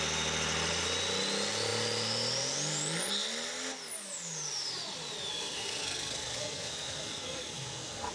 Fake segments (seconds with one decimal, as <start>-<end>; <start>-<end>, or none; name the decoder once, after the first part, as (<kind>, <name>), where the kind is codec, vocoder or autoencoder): 5.3-8.1 (codec, SNAC)